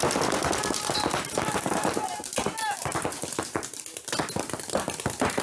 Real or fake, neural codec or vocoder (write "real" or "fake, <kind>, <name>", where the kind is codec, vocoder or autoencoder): real